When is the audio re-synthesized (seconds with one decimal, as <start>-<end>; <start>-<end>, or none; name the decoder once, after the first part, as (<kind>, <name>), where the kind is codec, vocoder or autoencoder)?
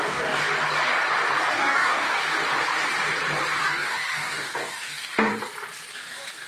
0.0-0.4 (codec, DAC); 1.5-2.2; 3.6-5.3; 5.9-6.5